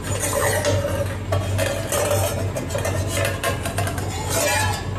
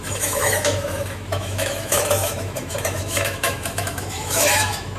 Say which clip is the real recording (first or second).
first